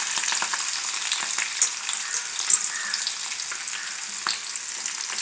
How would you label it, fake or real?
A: real